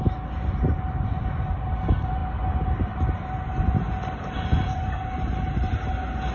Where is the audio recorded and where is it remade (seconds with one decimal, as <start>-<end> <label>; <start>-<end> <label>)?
0.0-6.3 recorded